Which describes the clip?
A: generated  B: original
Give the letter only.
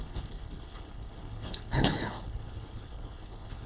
A